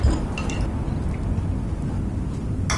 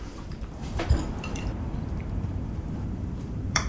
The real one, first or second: first